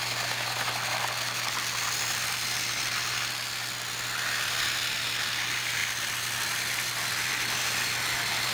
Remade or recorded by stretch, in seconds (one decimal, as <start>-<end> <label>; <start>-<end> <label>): 0.0-8.5 recorded